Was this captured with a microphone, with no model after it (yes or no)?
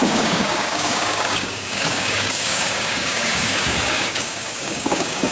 no